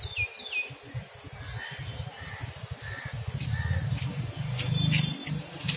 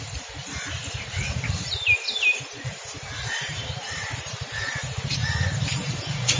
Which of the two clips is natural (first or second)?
first